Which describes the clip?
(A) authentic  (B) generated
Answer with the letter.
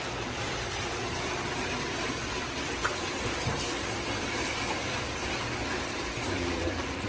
B